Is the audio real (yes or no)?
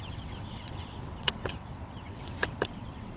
no